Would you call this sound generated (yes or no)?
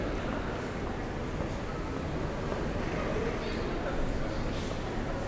no